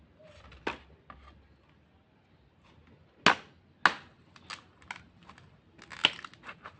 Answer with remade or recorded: recorded